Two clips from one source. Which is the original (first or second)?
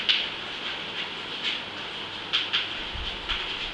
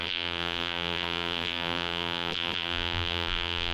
first